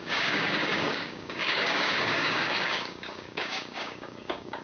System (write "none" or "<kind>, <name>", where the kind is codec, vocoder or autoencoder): codec, DAC